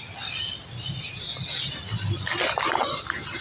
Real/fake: real